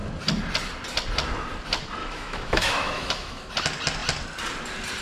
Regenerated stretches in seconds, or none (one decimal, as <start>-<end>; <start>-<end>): 2.0-3.5